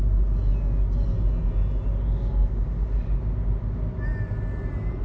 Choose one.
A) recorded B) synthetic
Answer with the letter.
A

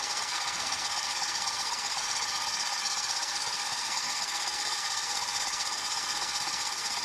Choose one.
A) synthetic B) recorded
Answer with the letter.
A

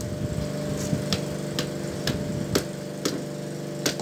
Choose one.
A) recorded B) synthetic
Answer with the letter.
A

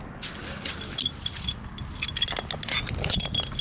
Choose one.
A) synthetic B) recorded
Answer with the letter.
B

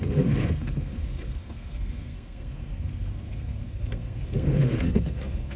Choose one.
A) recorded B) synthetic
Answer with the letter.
B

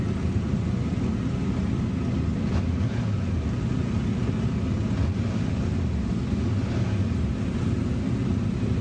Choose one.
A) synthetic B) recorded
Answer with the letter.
B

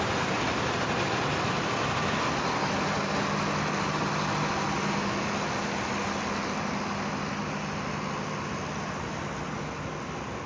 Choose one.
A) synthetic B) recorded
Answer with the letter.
B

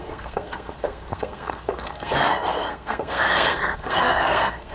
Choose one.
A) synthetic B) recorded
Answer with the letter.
A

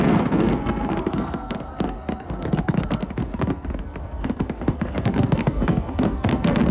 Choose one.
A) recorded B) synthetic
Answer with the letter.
B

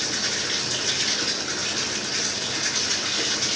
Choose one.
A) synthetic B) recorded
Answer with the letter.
B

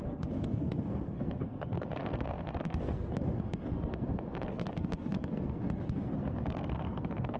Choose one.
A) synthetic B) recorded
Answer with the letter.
A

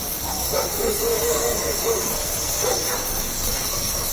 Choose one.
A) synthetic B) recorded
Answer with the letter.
A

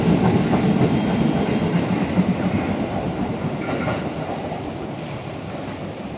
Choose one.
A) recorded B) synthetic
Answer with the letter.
A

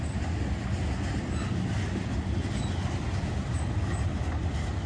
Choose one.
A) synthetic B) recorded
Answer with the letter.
B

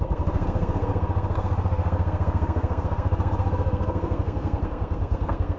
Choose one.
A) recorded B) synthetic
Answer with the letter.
B